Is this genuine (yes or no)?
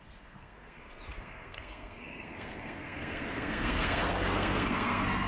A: no